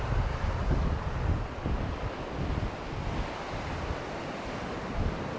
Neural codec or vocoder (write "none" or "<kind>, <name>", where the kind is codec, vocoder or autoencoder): none